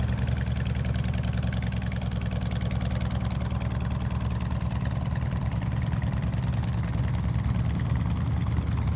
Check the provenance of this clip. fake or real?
real